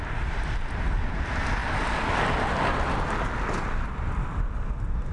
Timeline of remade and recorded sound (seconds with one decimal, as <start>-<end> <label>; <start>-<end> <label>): 0.0-5.1 recorded